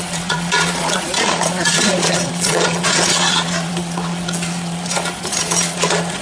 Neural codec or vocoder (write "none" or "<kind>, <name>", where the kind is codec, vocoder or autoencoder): vocoder, Vocos